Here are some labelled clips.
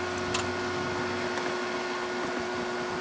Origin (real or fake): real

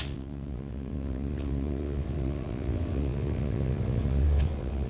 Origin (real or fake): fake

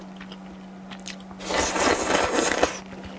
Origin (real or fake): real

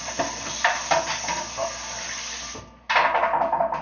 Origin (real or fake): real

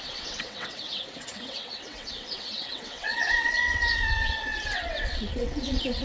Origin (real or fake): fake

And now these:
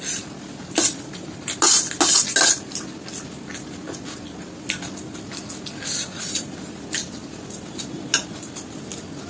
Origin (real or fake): real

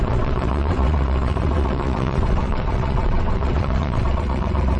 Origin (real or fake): fake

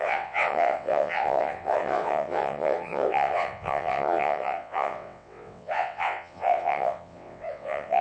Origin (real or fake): fake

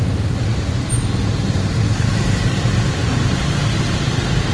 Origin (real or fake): real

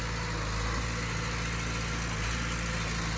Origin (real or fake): real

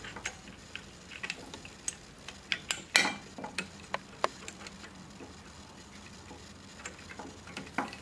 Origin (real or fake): real